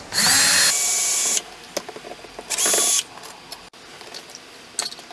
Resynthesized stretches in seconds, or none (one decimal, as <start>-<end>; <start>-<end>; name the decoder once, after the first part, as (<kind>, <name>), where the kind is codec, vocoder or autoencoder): none